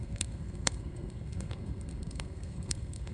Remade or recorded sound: remade